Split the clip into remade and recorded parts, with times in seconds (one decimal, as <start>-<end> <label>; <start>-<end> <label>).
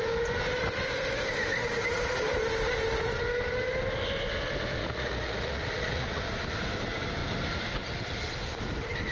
0.0-4.8 recorded; 4.8-6.2 remade; 6.2-9.1 recorded